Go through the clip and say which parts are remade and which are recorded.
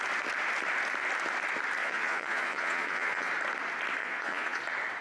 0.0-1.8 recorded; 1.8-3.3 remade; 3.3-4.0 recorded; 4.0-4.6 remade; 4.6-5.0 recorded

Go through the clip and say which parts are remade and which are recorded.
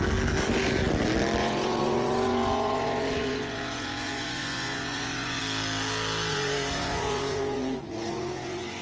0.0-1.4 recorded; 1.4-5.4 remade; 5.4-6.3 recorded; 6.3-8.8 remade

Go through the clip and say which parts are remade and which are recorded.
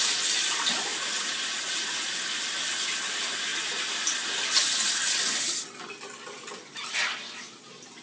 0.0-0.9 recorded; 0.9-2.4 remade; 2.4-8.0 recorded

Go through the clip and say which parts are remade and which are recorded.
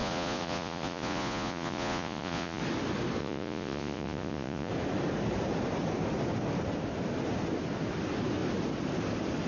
0.0-2.6 remade; 2.6-3.2 recorded; 3.2-4.7 remade; 4.7-9.5 recorded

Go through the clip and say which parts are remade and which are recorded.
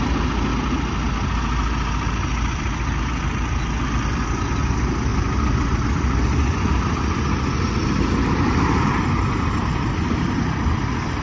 0.0-11.2 recorded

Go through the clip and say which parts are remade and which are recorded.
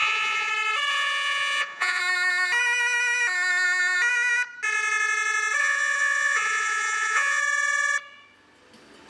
0.0-0.5 remade; 0.5-0.9 recorded; 0.9-2.0 remade; 2.0-5.6 recorded; 5.6-7.4 remade; 7.4-9.1 recorded